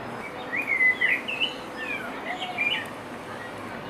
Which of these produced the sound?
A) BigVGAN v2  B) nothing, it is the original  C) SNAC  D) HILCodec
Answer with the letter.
B